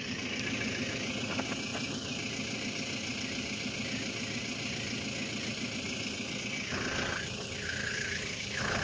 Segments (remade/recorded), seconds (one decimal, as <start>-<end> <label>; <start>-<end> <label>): 0.0-7.8 recorded; 7.8-8.8 remade